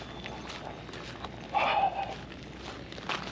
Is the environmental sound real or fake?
real